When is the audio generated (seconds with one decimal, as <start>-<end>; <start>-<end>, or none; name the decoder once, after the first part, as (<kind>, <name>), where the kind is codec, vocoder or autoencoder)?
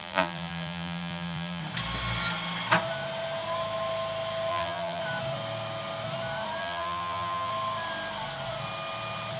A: 0.0-1.6 (vocoder, BigVGAN v2); 4.5-5.0; 6.6-7.5